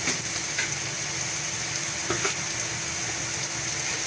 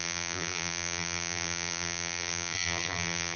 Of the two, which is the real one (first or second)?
first